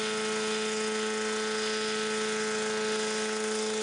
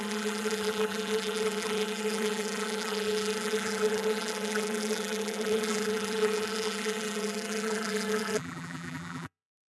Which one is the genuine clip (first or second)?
first